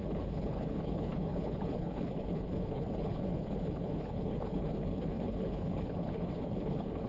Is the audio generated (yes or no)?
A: yes